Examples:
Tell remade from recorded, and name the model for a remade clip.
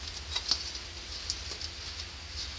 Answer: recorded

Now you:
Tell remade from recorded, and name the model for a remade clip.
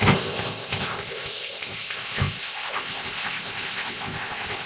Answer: remade, codec, ZipCodec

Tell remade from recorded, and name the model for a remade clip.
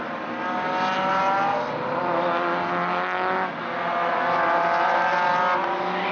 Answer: recorded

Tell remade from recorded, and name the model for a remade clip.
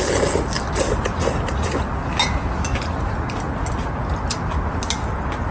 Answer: recorded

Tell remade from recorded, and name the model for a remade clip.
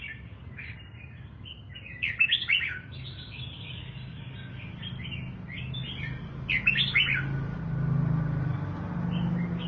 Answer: recorded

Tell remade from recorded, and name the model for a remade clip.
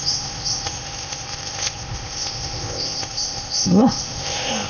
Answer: remade, codec, ZipCodec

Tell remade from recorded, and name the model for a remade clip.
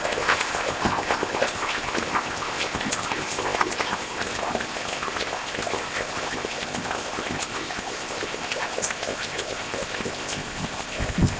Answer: remade, codec, ZipCodec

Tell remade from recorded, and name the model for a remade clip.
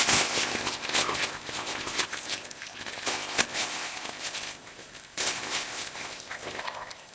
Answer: remade, codec, ZipCodec